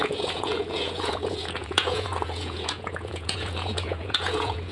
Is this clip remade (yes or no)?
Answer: yes